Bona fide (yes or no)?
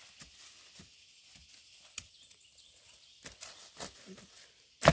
yes